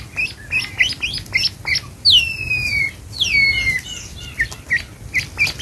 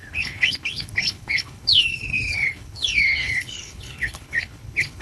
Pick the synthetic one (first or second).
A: second